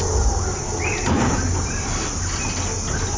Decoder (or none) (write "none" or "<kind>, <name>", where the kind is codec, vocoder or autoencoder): none